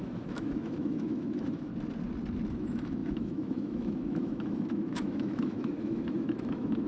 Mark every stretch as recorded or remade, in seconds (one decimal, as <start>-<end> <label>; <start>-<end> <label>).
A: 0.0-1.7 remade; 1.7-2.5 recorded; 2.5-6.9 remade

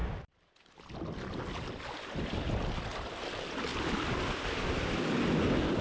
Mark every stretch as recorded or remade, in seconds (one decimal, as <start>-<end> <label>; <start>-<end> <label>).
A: 0.0-0.9 remade; 0.9-5.8 recorded

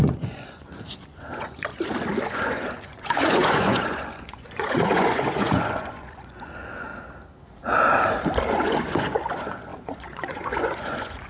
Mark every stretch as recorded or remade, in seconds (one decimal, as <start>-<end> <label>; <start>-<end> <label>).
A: 0.0-1.7 remade; 1.7-2.3 recorded; 2.3-6.9 remade; 6.9-8.5 recorded; 8.5-11.3 remade

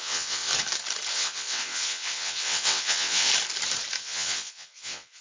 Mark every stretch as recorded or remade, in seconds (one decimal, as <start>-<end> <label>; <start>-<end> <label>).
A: 0.0-0.5 remade; 0.5-1.1 recorded; 1.1-3.3 remade; 3.3-4.0 recorded; 4.0-5.2 remade

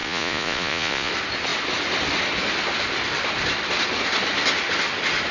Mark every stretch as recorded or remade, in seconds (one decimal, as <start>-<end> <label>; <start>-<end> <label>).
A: 0.0-1.1 remade; 1.1-5.3 recorded